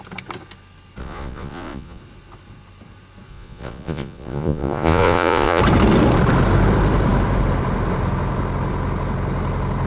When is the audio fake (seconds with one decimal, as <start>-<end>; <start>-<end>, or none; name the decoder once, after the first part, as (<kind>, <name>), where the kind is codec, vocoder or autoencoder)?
1.0-2.0 (vocoder, Vocos); 3.3-5.6